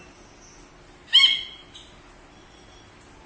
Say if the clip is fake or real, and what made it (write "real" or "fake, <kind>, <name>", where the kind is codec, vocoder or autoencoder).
real